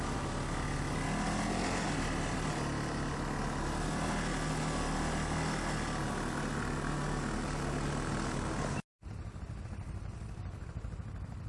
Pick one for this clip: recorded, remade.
recorded